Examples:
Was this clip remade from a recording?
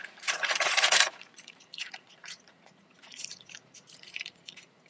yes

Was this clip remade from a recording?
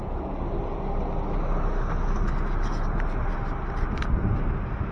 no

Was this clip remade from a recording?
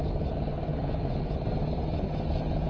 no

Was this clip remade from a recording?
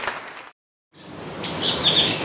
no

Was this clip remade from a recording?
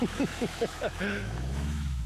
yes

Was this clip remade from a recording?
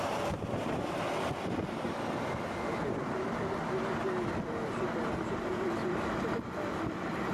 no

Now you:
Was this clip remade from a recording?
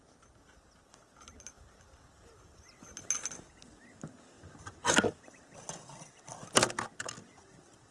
no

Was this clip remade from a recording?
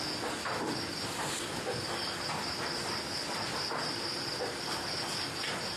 no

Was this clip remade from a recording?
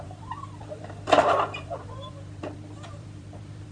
yes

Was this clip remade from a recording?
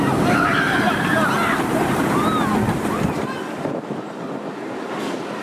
no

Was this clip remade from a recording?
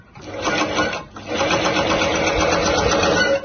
no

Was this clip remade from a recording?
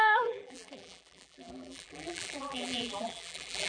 yes